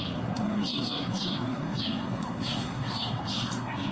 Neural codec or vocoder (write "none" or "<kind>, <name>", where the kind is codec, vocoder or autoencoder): codec, SNAC